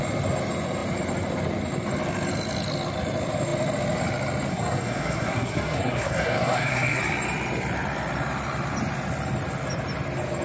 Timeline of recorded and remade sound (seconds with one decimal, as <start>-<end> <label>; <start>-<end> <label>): 0.0-4.5 recorded; 4.5-7.0 remade; 7.0-10.4 recorded